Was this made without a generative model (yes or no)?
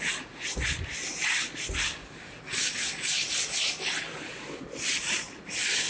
yes